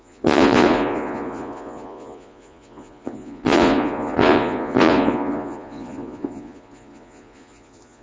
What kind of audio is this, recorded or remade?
remade